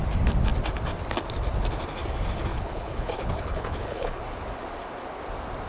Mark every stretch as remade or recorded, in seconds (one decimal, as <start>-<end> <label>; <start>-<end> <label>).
0.0-2.5 recorded; 2.5-4.2 remade; 4.2-5.7 recorded